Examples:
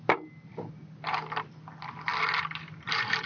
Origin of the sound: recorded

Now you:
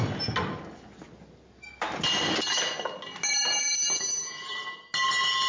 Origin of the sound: recorded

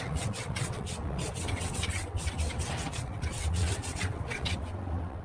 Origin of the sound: remade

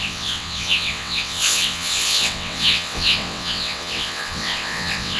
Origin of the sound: remade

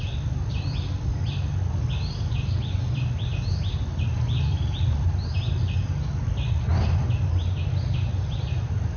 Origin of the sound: recorded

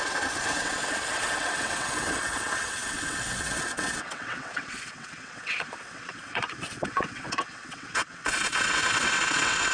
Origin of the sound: remade